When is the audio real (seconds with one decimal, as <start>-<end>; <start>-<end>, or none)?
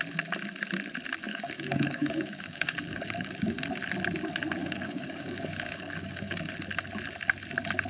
0.0-1.3; 3.6-4.6; 6.4-7.9